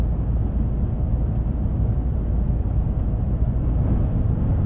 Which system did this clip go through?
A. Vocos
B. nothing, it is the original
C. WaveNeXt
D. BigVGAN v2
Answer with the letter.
B